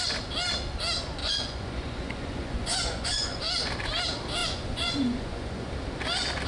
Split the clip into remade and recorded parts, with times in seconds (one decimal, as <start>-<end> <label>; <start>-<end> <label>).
0.0-1.2 recorded; 1.2-3.4 remade; 3.4-4.4 recorded; 4.4-5.7 remade; 5.7-6.5 recorded